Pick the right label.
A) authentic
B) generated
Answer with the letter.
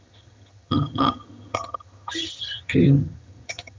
B